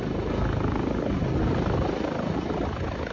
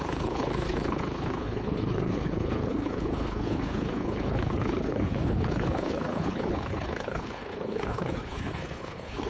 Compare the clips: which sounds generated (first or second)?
second